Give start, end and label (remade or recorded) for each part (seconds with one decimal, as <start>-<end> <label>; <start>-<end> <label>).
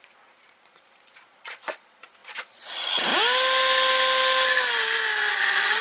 0.0-3.1 remade; 3.1-5.3 recorded; 5.3-5.8 remade